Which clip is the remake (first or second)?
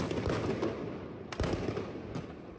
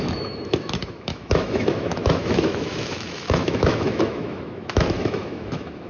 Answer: second